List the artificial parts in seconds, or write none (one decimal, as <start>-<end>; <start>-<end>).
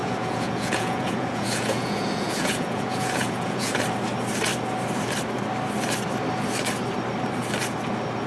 0.0-3.8